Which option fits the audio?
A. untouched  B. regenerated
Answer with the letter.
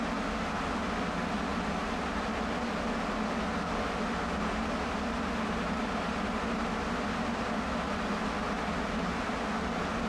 A